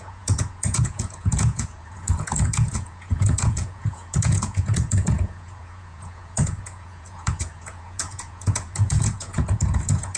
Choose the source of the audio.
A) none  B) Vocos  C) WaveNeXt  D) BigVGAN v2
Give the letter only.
B